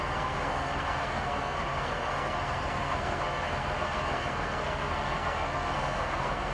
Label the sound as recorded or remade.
remade